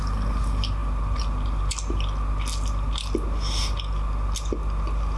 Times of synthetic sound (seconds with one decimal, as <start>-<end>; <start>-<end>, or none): none